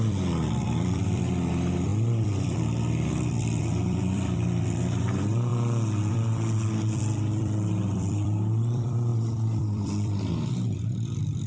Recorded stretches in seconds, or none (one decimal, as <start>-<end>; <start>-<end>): 5.5-6.1